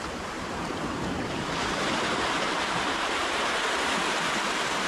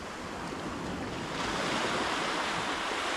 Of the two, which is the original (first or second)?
second